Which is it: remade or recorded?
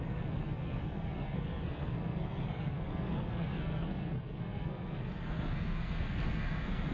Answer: remade